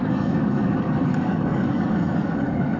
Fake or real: fake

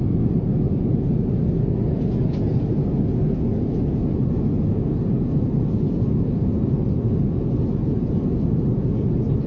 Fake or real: real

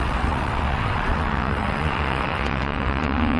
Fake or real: fake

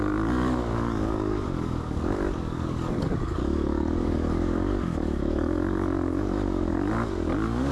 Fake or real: fake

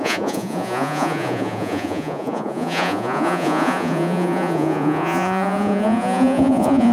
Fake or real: fake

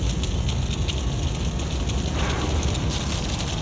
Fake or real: real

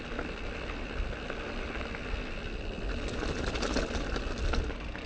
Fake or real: real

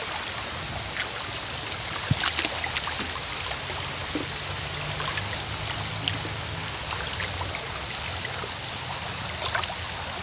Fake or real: real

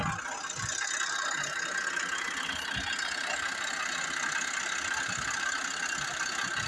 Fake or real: real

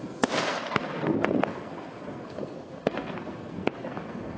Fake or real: fake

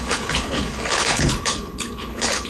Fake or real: fake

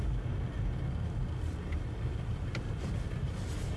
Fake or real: real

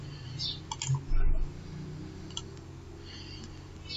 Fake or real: real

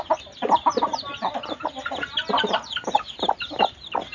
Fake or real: real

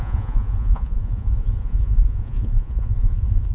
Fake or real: fake